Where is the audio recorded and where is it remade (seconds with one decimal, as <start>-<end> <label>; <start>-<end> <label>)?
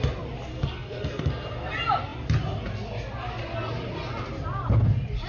0.0-0.5 recorded; 0.5-1.7 remade; 1.7-5.3 recorded